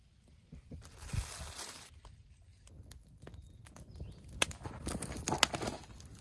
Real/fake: real